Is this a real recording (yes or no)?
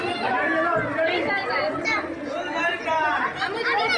yes